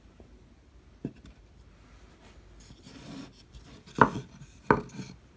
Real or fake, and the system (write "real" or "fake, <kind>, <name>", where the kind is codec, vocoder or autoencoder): real